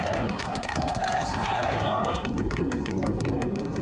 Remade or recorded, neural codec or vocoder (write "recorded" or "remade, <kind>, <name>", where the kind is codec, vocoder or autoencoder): remade, codec, SNAC